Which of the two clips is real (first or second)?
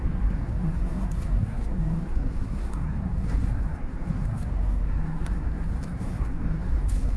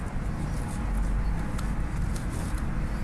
second